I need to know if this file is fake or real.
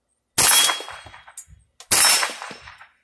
real